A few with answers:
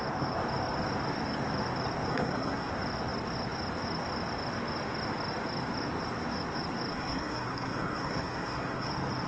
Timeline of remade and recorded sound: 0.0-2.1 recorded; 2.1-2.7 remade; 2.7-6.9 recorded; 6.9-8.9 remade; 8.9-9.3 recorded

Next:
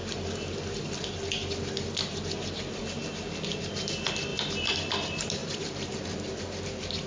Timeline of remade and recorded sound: 0.0-4.3 recorded; 4.3-4.9 remade; 4.9-5.4 recorded; 5.4-6.4 remade; 6.4-7.1 recorded

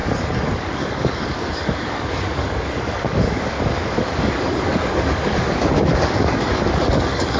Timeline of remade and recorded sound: 0.0-7.4 remade

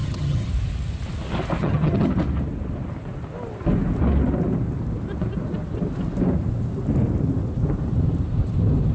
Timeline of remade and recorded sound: 0.0-0.5 remade; 0.5-1.6 recorded; 1.6-2.1 remade; 2.1-8.9 recorded

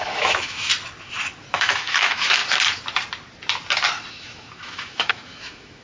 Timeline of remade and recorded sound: 0.0-0.7 remade; 0.7-1.5 recorded; 1.5-2.4 remade; 2.4-4.1 recorded; 4.1-5.8 remade

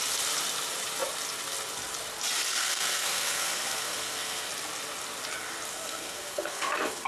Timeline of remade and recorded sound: 0.0-2.5 recorded; 2.5-4.5 remade; 4.5-5.7 recorded; 5.7-7.1 remade

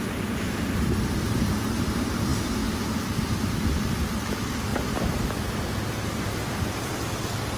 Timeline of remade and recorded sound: 0.0-7.6 recorded

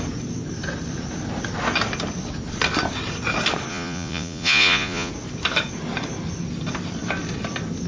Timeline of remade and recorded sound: 0.0-3.7 recorded; 3.7-5.1 remade; 5.1-7.9 recorded